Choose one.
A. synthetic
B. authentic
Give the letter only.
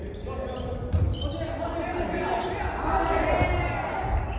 B